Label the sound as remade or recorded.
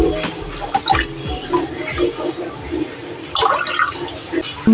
recorded